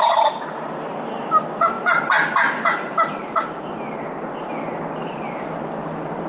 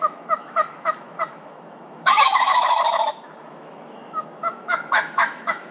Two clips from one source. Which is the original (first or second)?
first